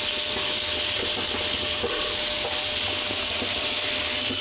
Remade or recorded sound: recorded